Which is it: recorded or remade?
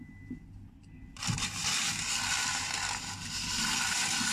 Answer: recorded